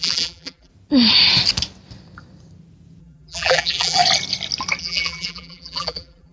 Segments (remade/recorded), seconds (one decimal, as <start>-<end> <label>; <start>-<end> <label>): 0.0-0.7 remade; 0.7-3.0 recorded; 3.0-4.0 remade; 4.0-4.8 recorded; 4.8-6.3 remade